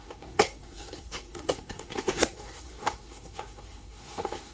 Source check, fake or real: fake